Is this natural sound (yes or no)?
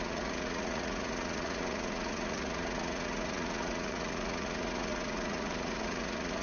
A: no